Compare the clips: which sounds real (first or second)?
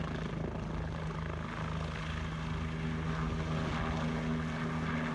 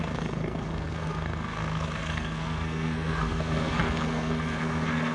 first